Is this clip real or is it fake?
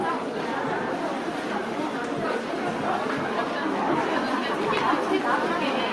real